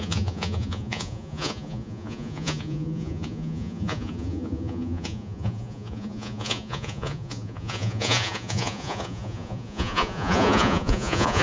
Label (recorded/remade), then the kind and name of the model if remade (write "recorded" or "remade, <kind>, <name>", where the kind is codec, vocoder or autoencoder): remade, vocoder, Vocos